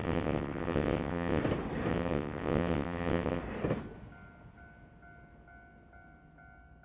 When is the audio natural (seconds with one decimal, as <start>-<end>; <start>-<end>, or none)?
1.4-1.9; 3.4-6.8